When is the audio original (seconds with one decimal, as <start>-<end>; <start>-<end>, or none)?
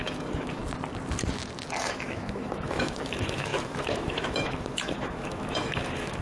0.6-1.8